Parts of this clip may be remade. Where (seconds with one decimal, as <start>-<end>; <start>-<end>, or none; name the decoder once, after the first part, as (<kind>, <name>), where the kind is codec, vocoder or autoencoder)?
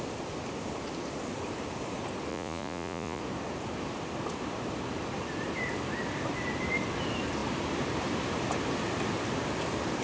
2.3-3.2 (vocoder, Vocos)